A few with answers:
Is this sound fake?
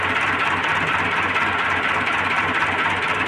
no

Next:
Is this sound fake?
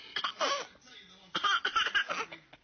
no